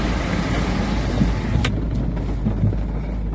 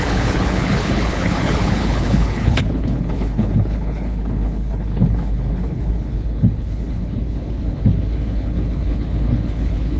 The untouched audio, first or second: first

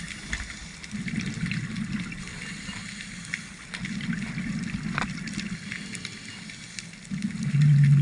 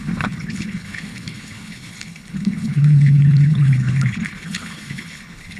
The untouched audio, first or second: first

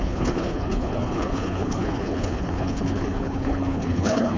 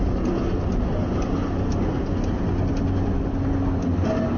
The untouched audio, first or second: second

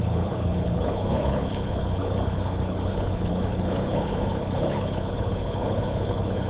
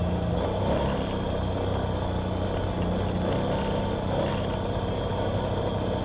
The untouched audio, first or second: second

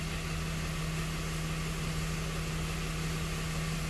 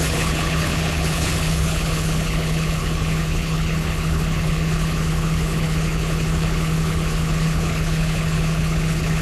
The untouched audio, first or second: first